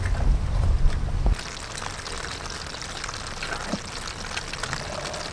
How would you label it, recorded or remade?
recorded